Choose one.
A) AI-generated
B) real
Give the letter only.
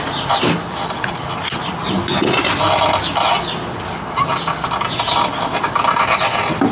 B